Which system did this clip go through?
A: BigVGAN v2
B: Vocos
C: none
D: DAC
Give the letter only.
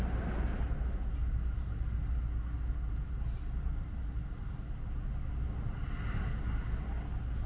C